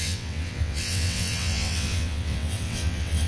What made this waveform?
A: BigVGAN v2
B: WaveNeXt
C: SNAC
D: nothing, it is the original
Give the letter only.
B